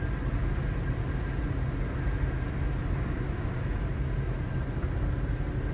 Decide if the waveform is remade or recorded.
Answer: recorded